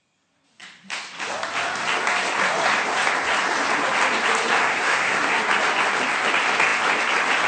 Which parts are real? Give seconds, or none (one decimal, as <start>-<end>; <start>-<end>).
0.0-4.6; 5.4-7.5